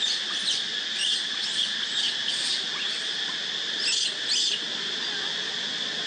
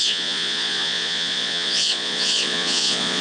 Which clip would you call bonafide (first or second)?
first